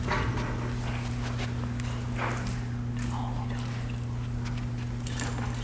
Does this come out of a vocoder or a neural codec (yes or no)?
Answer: no